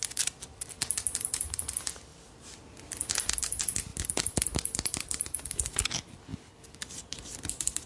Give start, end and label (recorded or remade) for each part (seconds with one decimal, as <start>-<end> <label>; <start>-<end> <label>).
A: 0.0-7.9 recorded